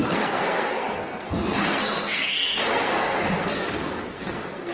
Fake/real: fake